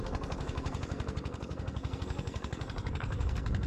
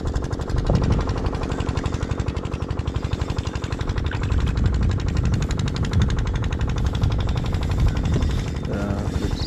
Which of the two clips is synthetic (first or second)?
first